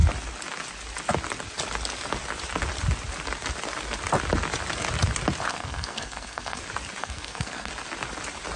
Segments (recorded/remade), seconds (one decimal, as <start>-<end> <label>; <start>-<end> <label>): 0.0-5.5 recorded; 5.5-6.6 remade; 6.6-7.0 recorded; 7.0-7.7 remade; 7.7-8.6 recorded